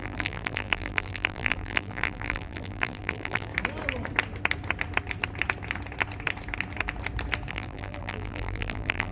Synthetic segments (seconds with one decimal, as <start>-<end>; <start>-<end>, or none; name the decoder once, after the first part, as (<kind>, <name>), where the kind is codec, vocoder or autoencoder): 0.0-3.5 (vocoder, BigVGAN v2); 7.5-9.1